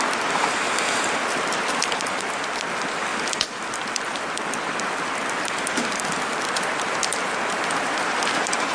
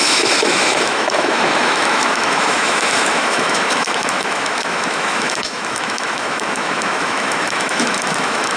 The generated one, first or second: second